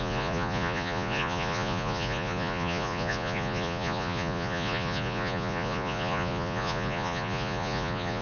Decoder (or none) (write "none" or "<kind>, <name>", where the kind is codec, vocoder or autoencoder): vocoder, Vocos